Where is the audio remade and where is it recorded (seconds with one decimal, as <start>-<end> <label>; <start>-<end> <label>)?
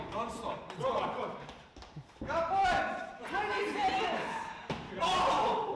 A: 0.0-0.4 remade; 0.4-1.2 recorded; 1.2-5.8 remade